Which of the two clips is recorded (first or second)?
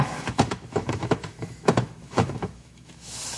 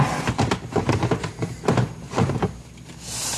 second